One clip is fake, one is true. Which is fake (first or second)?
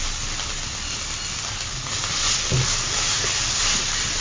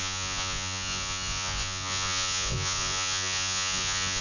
second